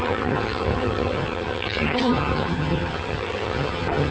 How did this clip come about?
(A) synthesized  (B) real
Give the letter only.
A